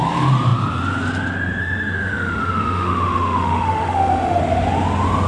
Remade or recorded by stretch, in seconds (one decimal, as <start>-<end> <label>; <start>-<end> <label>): 0.0-1.6 recorded; 1.6-4.4 remade; 4.4-5.3 recorded

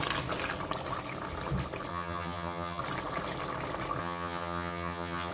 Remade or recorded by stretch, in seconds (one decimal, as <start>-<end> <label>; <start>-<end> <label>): 0.0-1.9 recorded; 1.9-2.8 remade; 2.8-4.0 recorded; 4.0-5.3 remade

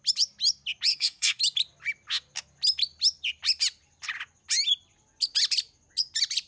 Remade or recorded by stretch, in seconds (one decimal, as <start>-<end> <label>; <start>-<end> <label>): 0.0-0.9 recorded; 0.9-1.4 remade; 1.4-6.5 recorded

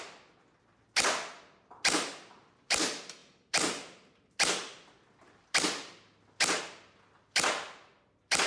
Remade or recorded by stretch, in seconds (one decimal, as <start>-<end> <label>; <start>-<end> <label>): 0.0-8.5 recorded

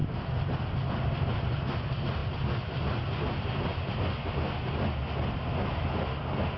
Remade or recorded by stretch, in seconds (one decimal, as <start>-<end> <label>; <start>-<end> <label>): 0.0-6.6 recorded